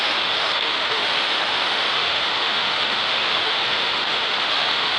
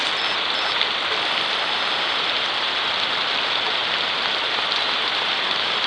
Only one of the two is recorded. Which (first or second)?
second